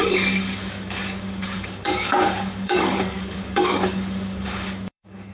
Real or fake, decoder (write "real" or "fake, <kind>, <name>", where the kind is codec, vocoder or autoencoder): fake, codec, DAC